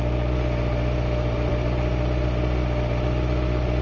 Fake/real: real